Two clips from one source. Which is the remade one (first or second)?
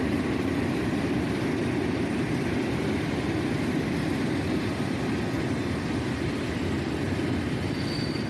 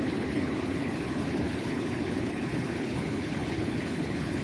second